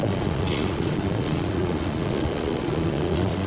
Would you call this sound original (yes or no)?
no